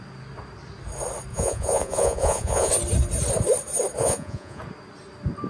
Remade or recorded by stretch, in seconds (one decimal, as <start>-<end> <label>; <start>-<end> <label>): 0.0-1.3 recorded; 1.3-2.7 remade; 2.7-4.0 recorded; 4.0-4.6 remade; 4.6-5.5 recorded